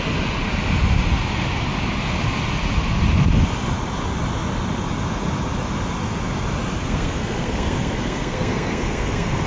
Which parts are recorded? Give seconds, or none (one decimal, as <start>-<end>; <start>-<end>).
0.0-6.8